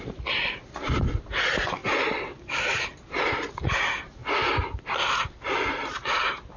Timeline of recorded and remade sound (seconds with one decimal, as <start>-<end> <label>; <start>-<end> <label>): 0.0-6.6 recorded